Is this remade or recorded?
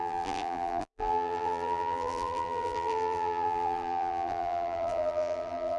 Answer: remade